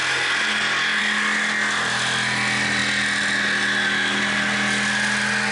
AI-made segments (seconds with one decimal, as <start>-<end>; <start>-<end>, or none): none